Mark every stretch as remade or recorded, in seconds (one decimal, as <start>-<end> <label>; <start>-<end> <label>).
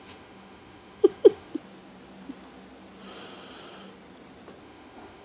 0.0-1.5 remade; 1.5-4.6 recorded; 4.6-5.2 remade